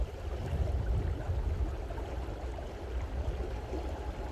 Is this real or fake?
real